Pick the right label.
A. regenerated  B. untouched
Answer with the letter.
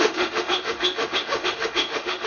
A